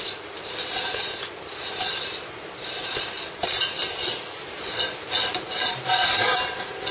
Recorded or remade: remade